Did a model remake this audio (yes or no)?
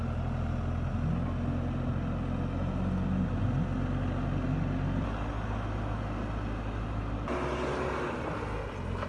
no